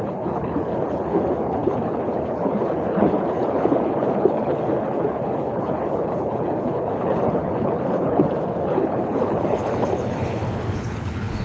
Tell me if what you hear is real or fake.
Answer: fake